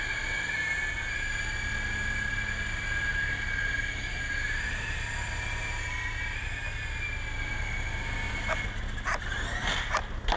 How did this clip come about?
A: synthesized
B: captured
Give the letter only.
B